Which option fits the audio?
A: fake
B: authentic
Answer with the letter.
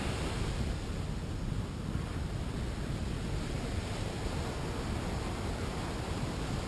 B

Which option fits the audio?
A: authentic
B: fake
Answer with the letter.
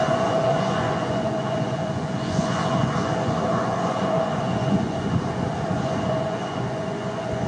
B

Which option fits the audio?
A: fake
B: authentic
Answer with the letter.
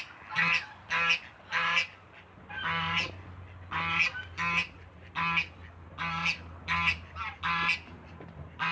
B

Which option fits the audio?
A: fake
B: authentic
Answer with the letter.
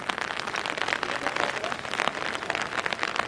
B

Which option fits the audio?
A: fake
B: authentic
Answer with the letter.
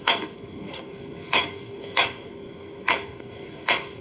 A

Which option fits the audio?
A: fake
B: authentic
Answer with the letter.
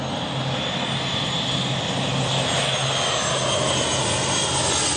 B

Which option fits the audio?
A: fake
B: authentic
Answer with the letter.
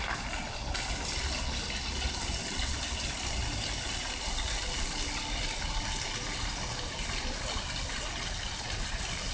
B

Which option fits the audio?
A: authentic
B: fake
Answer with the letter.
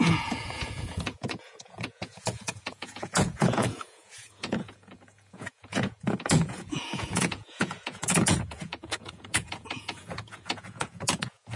B